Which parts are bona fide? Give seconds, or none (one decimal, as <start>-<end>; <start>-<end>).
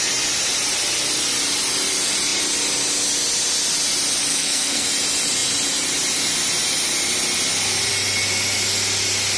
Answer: 0.0-4.3; 4.9-9.4